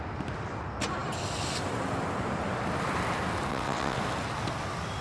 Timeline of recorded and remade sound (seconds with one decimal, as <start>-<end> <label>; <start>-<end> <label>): 0.0-3.5 recorded; 3.5-4.0 remade; 4.0-5.0 recorded